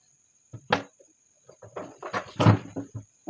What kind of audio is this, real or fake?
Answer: real